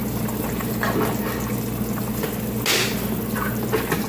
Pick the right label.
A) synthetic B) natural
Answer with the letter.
B